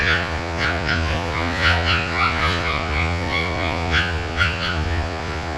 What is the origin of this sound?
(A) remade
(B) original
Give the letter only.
A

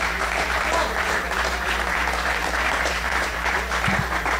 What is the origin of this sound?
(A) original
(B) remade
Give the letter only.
B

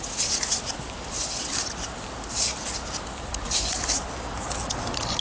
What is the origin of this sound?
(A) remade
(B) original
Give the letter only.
B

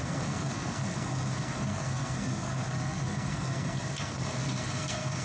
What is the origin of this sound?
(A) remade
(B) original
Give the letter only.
A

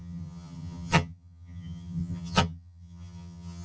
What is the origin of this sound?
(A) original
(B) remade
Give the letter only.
B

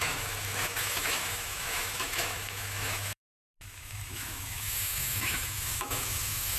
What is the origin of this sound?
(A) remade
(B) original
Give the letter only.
A